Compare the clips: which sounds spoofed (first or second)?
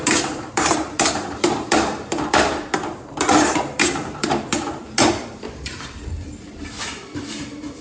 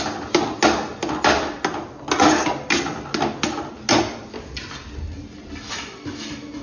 first